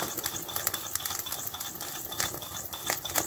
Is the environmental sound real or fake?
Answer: real